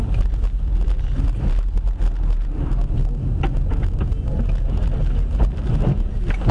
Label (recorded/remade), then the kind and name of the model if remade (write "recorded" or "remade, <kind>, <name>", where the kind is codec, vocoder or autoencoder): recorded